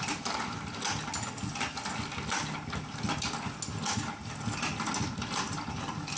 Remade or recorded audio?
recorded